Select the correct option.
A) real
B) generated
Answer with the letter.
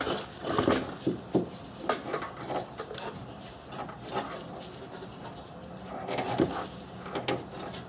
A